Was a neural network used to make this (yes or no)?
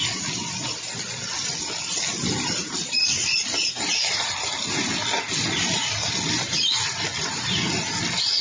no